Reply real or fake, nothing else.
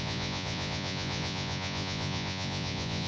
fake